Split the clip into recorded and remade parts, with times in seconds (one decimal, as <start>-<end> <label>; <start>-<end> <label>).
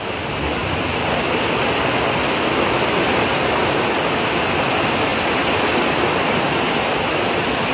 0.0-7.7 recorded